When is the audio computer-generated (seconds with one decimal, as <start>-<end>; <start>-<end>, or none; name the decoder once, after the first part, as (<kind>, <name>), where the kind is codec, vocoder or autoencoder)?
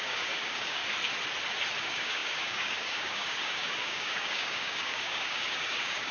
0.0-0.8 (codec, DAC); 1.8-6.1